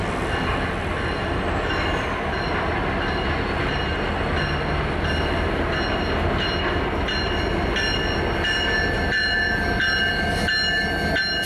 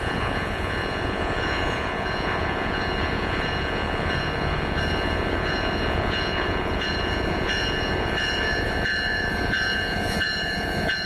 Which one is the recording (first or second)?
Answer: first